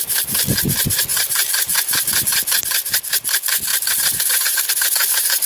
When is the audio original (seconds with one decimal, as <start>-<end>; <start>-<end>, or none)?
0.0-5.5